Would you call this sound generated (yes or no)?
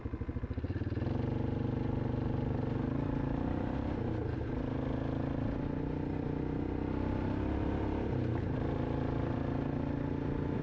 no